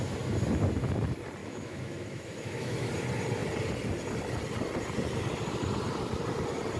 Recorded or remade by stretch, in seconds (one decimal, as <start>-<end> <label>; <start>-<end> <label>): 0.0-1.4 recorded; 1.4-2.9 remade; 2.9-6.8 recorded